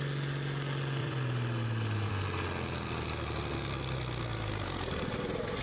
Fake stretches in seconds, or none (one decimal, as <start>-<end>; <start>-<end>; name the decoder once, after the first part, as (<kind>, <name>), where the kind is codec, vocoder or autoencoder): 1.0-2.1 (vocoder, BigVGAN v2)